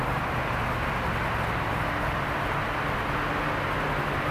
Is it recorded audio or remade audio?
recorded